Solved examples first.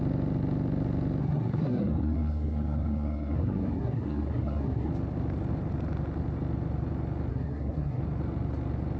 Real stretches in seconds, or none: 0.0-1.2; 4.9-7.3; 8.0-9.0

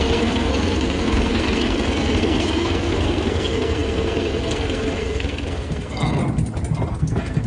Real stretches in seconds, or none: 6.2-6.9

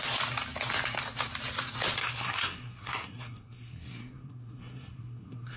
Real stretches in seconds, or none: 0.0-2.0